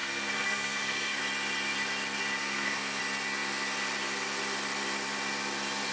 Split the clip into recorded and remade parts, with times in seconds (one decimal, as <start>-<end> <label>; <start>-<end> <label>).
0.0-1.2 remade; 1.2-2.4 recorded; 2.4-3.0 remade; 3.0-5.9 recorded